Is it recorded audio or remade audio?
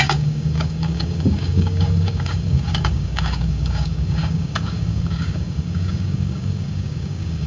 remade